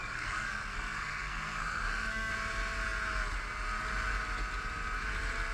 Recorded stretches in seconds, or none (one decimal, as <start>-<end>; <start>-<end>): 2.3-5.5